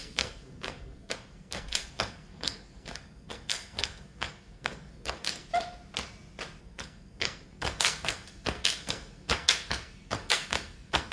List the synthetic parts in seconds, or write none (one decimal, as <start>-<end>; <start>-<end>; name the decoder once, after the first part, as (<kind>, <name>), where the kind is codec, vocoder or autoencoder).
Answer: 0.0-5.5 (codec, SNAC); 6.6-11.1